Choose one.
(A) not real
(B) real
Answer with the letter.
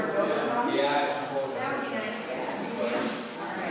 B